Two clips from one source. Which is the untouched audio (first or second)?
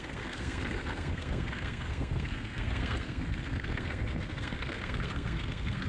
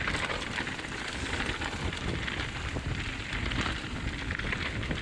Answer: second